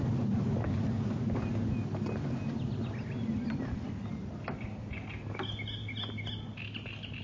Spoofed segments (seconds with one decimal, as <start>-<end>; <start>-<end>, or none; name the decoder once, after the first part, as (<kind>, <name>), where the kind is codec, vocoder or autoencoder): none